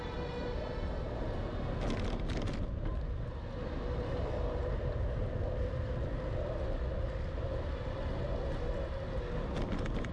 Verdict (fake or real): real